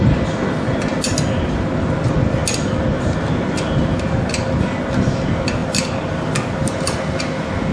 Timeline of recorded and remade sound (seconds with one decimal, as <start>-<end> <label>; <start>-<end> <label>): 0.0-7.7 recorded

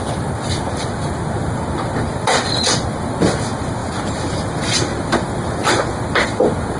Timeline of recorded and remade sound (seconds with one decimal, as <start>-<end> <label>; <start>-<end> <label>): 0.0-6.8 recorded

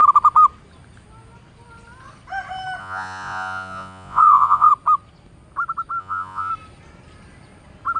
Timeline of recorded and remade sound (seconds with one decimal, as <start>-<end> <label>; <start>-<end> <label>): 0.0-2.8 recorded; 2.8-4.7 remade; 4.7-6.0 recorded; 6.0-6.5 remade; 6.5-8.0 recorded

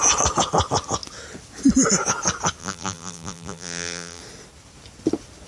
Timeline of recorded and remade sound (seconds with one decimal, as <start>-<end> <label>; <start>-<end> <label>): 0.0-2.6 recorded; 2.6-4.2 remade; 4.2-5.5 recorded

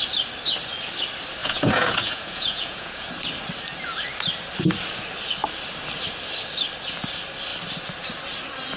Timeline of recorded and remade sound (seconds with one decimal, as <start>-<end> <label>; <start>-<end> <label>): 0.0-1.4 recorded; 1.4-3.1 remade; 3.1-8.8 recorded

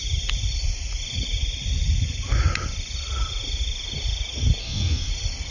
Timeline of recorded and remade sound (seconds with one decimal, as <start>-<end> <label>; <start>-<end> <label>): 0.0-4.6 recorded; 4.6-5.1 remade; 5.1-5.5 recorded

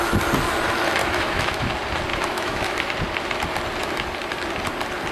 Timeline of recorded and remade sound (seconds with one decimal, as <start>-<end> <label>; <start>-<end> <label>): 0.0-1.0 recorded; 1.0-1.7 remade; 1.7-2.1 recorded; 2.1-2.9 remade; 2.9-5.1 recorded